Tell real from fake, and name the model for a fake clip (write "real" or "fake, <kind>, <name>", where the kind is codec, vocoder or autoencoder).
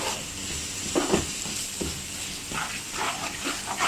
real